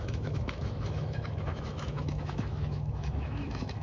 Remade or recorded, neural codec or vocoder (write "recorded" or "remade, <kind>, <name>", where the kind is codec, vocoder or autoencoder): remade, autoencoder, DAC-VAE